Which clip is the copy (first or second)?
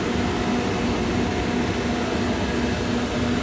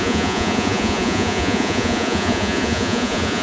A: second